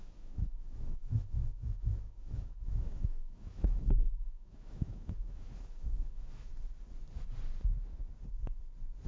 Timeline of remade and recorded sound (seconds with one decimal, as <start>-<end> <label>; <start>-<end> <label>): 0.0-6.5 remade; 6.5-9.1 recorded